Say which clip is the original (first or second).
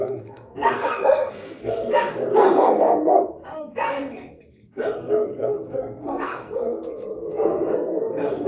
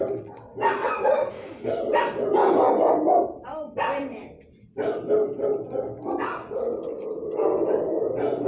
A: second